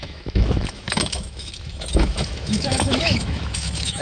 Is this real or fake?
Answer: fake